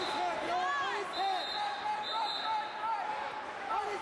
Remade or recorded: recorded